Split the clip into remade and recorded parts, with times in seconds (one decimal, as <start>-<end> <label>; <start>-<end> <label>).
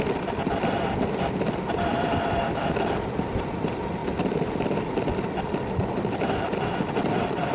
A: 0.0-1.9 recorded; 1.9-2.4 remade; 2.4-7.5 recorded